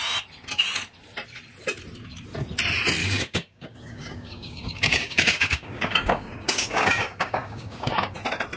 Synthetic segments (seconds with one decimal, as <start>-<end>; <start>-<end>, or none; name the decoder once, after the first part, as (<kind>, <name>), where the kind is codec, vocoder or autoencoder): 3.0-8.2 (codec, DAC)